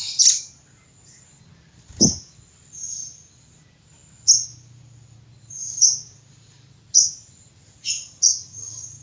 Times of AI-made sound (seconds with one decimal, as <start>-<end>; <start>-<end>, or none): none